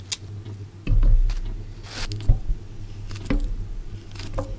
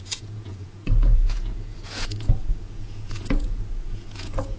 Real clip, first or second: first